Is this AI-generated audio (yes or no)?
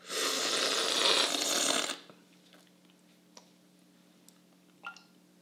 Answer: no